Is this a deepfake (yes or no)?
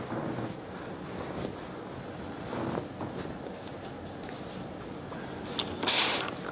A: no